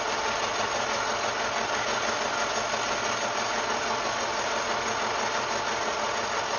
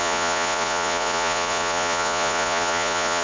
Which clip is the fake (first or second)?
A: second